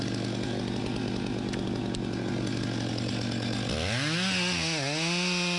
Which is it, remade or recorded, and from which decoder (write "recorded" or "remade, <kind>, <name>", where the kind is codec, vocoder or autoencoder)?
recorded